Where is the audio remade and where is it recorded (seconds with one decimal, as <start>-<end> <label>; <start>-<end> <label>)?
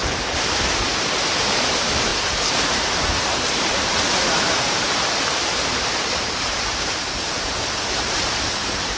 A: 0.0-9.0 remade